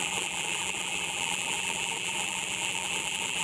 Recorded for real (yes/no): no